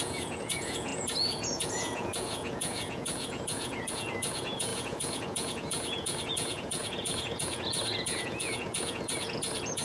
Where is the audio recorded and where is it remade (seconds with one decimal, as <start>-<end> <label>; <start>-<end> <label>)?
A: 0.0-9.8 remade